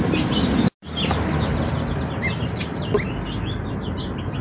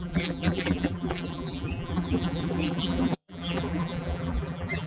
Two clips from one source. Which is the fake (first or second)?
second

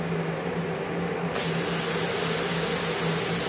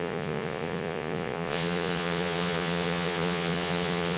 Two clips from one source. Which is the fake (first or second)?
second